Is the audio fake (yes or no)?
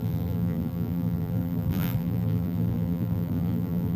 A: yes